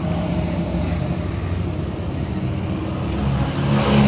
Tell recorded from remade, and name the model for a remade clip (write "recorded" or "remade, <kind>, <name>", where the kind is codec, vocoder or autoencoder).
recorded